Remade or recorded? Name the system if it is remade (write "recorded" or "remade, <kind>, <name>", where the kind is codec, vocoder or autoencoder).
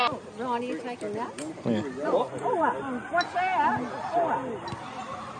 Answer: recorded